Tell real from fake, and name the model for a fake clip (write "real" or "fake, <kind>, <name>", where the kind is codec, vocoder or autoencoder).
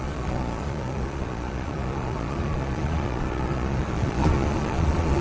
fake, vocoder, Vocos